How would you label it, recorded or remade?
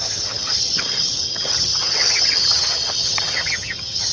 remade